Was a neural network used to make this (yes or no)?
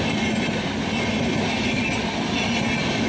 no